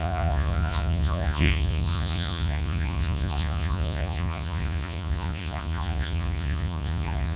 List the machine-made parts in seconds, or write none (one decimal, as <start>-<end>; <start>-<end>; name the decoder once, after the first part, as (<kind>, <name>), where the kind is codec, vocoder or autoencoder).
0.0-7.4 (vocoder, Vocos)